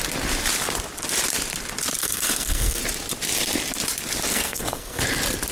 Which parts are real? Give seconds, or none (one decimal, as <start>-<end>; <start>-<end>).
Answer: 0.0-2.0; 2.8-4.3; 5.0-5.5

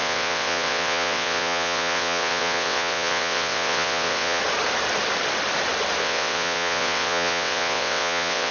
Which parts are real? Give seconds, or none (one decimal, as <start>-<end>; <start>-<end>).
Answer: 4.4-6.0

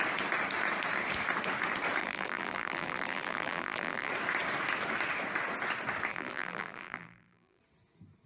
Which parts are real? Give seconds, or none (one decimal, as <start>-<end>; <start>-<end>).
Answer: 0.0-2.0; 4.1-6.1; 7.6-8.3

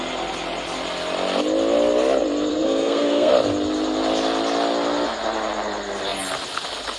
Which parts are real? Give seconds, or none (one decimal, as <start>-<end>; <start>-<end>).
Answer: 0.0-2.5; 3.3-7.0

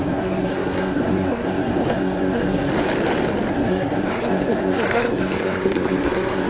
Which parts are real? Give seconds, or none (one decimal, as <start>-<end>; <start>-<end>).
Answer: 2.7-3.5

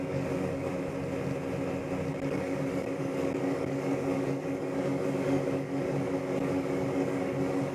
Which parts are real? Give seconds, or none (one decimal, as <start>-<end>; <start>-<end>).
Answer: 0.7-2.1

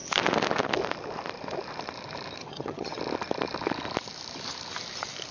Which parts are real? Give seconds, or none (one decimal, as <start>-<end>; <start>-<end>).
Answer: 0.0-2.4; 3.0-5.3

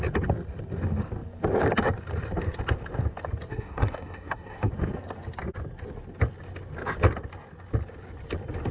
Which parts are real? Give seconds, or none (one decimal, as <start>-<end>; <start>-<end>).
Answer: 0.0-3.5; 4.7-8.7